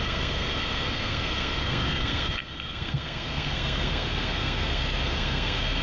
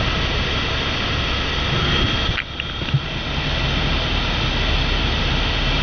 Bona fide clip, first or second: second